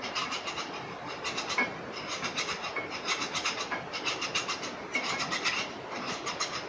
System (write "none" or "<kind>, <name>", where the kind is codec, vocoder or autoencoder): vocoder, BigVGAN v2